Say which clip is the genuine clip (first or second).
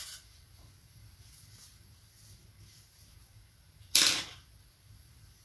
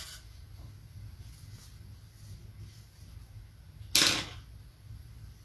second